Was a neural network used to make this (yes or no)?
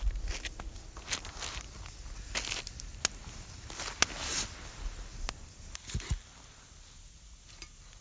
no